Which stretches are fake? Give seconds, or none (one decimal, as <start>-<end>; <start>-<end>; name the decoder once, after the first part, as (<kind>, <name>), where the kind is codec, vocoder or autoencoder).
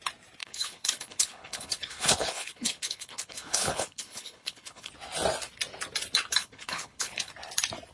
0.4-4.9 (codec, HILCodec); 6.4-7.3